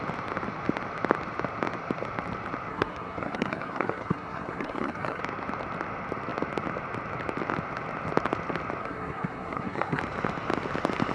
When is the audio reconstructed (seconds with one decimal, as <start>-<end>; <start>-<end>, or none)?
2.7-5.2; 8.8-10.0